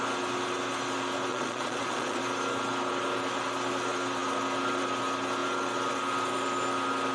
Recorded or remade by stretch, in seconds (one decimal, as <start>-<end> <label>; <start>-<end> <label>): 0.0-1.3 recorded; 1.3-2.2 remade; 2.2-7.1 recorded